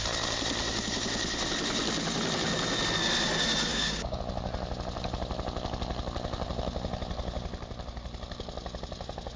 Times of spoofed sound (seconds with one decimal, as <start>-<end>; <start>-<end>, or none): 3.7-4.2